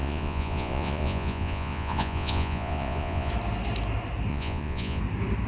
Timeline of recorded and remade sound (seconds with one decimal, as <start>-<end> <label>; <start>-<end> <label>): 0.0-3.3 remade; 3.3-4.3 recorded; 4.3-5.0 remade; 5.0-5.5 recorded